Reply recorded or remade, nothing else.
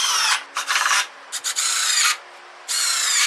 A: recorded